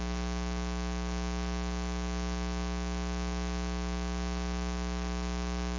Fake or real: real